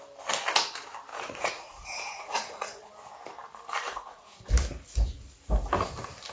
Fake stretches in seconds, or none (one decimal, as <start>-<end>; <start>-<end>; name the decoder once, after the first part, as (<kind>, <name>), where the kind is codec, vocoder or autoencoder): 1.1-2.9 (vocoder, Vocos); 3.8-4.4